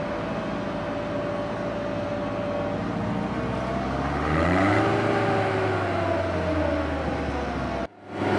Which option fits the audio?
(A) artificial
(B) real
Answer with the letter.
B